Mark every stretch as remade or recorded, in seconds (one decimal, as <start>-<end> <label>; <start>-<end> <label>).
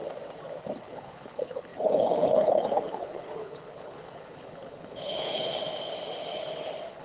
0.0-0.8 recorded; 0.8-5.6 remade; 5.6-7.0 recorded